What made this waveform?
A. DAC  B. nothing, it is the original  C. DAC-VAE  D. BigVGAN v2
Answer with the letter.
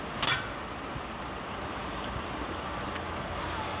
B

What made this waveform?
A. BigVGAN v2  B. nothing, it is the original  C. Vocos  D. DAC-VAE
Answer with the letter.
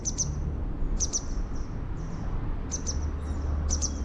B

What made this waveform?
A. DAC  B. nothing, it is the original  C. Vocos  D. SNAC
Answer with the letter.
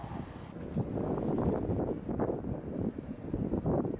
B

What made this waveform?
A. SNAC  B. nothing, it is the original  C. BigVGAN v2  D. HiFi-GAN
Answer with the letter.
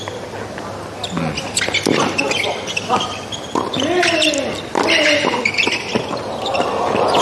B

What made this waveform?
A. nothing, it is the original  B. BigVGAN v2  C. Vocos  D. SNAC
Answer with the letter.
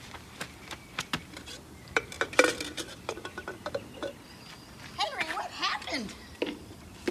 B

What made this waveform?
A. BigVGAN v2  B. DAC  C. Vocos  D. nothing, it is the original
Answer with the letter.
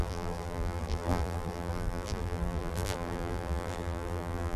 A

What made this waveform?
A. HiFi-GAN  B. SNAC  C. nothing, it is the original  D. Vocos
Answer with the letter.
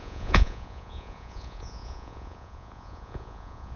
D